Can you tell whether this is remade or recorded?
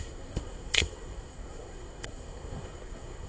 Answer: remade